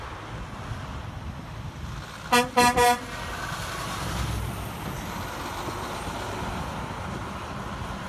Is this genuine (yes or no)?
yes